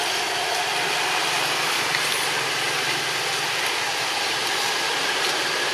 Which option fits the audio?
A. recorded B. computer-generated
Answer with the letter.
A